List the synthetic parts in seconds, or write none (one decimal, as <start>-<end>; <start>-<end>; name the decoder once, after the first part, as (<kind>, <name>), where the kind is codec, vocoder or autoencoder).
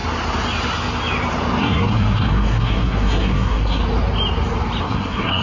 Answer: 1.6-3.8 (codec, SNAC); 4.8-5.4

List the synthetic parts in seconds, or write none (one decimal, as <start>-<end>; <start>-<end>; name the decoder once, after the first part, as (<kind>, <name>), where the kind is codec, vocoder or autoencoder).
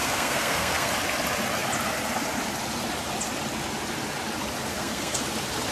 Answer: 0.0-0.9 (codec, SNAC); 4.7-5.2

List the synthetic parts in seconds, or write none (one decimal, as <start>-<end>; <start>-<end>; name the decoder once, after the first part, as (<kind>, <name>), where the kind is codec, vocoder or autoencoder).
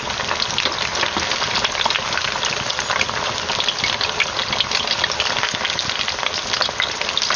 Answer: none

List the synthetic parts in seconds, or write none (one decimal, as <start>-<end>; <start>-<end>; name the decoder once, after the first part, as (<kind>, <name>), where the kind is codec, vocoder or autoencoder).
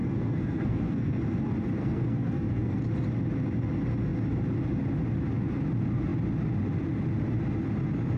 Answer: 0.0-1.2 (codec, SNAC); 1.8-2.8